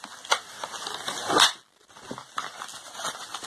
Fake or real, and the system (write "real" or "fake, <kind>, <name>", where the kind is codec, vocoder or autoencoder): real